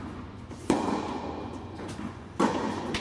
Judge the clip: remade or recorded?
remade